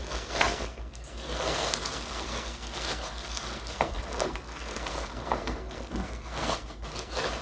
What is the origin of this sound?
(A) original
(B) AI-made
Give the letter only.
B